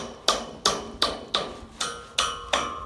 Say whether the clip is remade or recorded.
recorded